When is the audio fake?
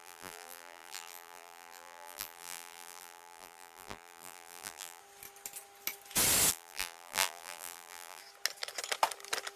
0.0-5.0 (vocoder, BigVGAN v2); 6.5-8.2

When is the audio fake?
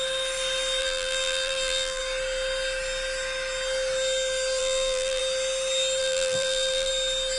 0.8-2.0 (vocoder, BigVGAN v2); 4.6-5.2; 6.0-6.9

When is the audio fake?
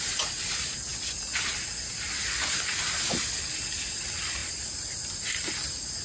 none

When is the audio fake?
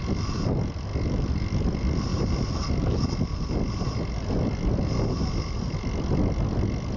0.0-3.3 (vocoder, BigVGAN v2)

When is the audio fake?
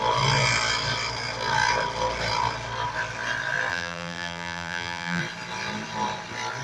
3.7-5.2 (vocoder, BigVGAN v2)